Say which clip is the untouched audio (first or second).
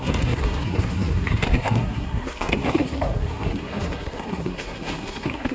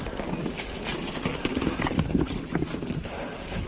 second